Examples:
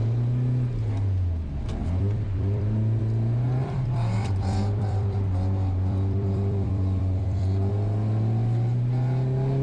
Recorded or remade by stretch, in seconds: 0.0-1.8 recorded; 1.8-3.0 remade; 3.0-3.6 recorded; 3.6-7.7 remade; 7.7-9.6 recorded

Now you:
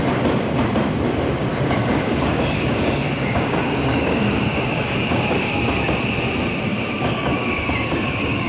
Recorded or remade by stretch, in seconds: 0.0-1.8 recorded; 1.8-5.6 remade; 5.6-6.7 recorded; 6.7-8.5 remade

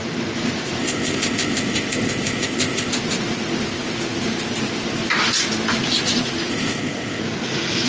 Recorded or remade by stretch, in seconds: 0.0-0.8 recorded; 0.8-2.9 remade; 2.9-6.5 recorded; 6.5-7.2 remade; 7.2-7.9 recorded